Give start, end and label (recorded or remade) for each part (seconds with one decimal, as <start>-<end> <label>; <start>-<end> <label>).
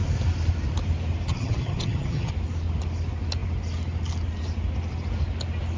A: 0.0-1.3 recorded; 1.3-2.3 remade; 2.3-5.8 recorded